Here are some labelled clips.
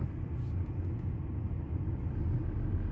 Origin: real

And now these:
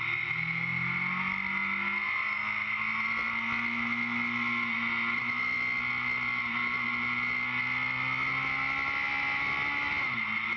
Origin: real